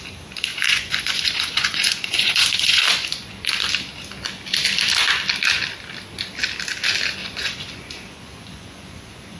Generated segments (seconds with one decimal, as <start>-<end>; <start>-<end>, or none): 0.5-3.7; 7.2-9.4